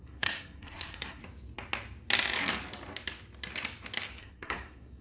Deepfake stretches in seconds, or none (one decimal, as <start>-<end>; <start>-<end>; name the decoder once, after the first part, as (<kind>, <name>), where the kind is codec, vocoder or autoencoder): 0.0-1.2 (codec, SNAC); 4.2-5.0